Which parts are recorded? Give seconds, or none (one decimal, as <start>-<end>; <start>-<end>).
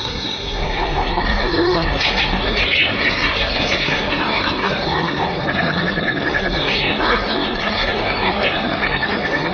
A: none